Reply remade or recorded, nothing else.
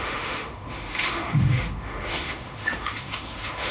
remade